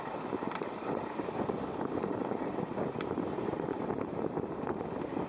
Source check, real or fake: real